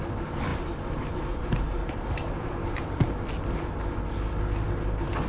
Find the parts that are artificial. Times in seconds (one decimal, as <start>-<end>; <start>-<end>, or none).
0.5-3.1